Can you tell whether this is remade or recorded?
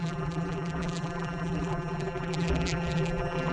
remade